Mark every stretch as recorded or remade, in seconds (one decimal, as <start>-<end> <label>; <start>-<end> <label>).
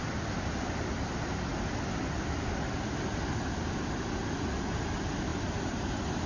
0.0-5.3 recorded; 5.3-6.3 remade